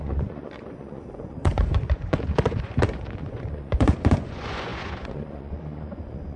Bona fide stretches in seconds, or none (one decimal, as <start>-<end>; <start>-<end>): none